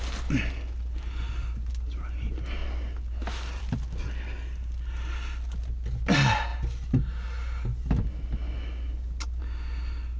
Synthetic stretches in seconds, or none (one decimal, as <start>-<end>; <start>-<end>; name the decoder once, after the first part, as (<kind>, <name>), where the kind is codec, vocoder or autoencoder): none